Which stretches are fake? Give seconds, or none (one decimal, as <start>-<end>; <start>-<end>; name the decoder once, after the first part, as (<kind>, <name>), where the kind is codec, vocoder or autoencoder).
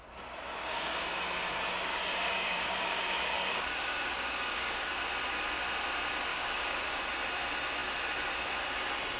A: 0.6-1.2 (codec, DAC); 1.9-4.9; 6.3-7.0